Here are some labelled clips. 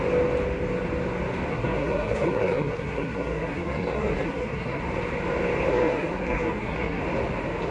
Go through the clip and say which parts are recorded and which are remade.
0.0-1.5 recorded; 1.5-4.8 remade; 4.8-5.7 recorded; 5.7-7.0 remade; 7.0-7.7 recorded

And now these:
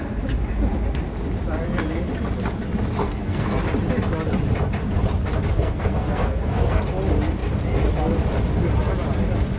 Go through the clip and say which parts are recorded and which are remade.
0.0-3.0 recorded; 3.0-3.6 remade; 3.6-5.5 recorded; 5.5-6.8 remade; 6.8-9.6 recorded

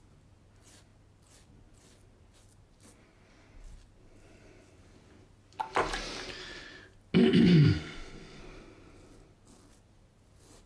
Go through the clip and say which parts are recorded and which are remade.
0.0-7.2 recorded; 7.2-8.4 remade; 8.4-10.7 recorded

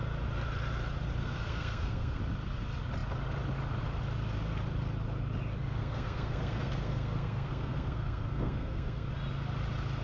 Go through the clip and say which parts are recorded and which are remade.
0.0-1.2 recorded; 1.2-2.2 remade; 2.2-5.8 recorded; 5.8-9.1 remade; 9.1-10.0 recorded

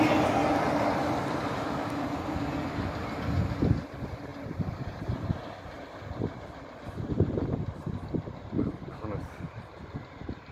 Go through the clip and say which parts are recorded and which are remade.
0.0-10.5 recorded

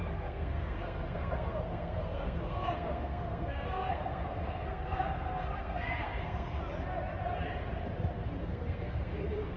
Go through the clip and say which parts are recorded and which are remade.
0.0-6.6 remade; 6.6-8.4 recorded; 8.4-9.6 remade

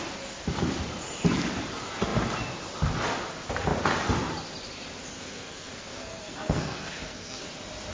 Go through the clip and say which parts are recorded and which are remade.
0.0-5.2 recorded; 5.2-7.5 remade; 7.5-7.9 recorded